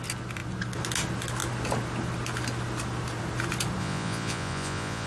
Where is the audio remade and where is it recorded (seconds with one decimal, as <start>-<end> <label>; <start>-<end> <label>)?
0.0-3.8 recorded; 3.8-5.1 remade